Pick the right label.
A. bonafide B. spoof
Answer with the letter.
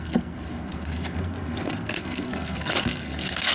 B